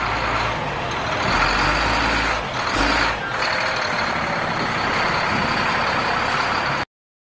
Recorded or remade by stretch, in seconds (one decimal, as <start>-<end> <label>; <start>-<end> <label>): 0.0-7.2 recorded